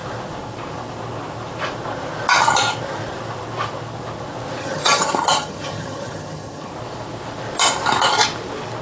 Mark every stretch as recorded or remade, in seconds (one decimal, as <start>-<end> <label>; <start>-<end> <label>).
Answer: 0.0-4.6 recorded; 4.6-6.7 remade; 6.7-8.8 recorded